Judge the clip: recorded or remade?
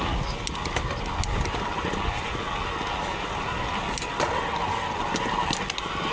recorded